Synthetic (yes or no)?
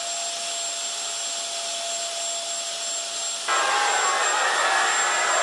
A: no